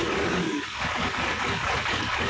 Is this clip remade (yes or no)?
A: yes